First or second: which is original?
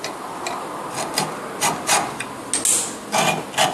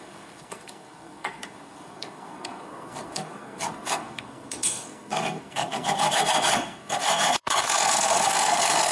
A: first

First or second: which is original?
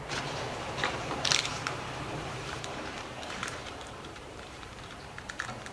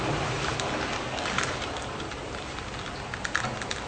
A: second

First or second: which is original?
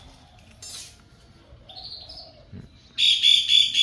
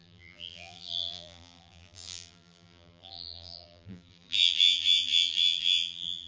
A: first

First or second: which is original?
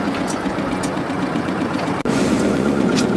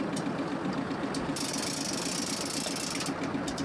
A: second